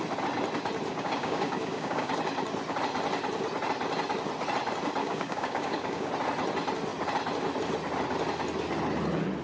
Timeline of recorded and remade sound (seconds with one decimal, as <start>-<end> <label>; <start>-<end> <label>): 0.0-0.9 recorded; 0.9-2.1 remade; 2.1-5.0 recorded; 5.0-6.1 remade; 6.1-9.4 recorded